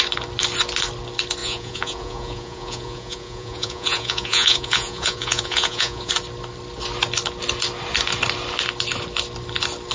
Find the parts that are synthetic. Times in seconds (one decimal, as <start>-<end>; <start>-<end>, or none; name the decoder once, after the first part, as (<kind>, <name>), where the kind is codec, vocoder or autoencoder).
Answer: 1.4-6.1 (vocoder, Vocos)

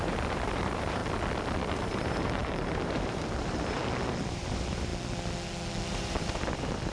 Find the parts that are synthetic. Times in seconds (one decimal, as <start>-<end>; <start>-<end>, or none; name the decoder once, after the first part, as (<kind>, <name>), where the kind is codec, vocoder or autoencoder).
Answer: 0.0-1.0 (vocoder, BigVGAN v2); 1.7-3.8; 4.3-4.9; 5.9-6.9

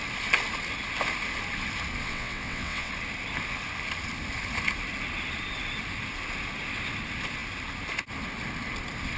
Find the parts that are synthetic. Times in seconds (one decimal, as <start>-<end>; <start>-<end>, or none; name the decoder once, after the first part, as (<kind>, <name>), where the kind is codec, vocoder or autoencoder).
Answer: 2.0-2.9 (vocoder, WaveNeXt)